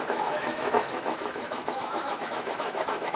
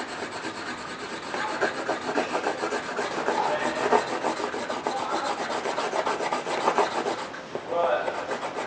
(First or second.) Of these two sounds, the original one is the second